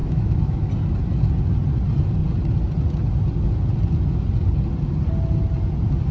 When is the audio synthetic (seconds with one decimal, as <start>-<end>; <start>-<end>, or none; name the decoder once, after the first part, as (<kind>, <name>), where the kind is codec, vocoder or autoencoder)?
0.0-0.7 (autoencoder, DAC-VAE)